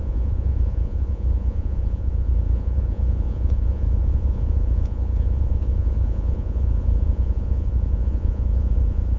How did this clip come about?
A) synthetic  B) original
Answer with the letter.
A